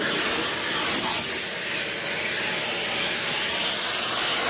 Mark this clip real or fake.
real